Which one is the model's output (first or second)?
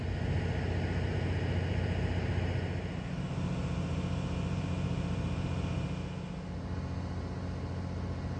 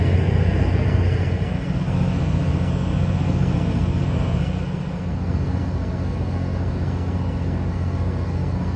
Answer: second